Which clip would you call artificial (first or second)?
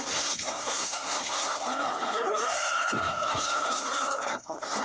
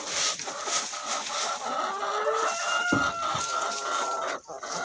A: first